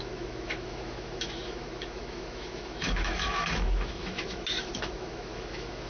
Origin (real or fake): fake